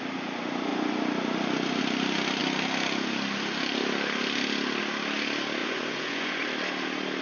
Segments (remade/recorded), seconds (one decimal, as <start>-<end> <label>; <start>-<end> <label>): 0.0-5.6 recorded; 5.6-6.4 remade; 6.4-7.2 recorded